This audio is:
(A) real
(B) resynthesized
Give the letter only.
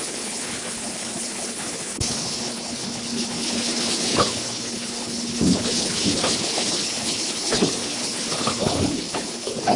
B